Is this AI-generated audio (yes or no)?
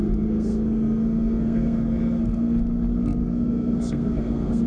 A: yes